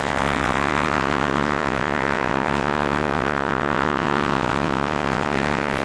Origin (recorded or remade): remade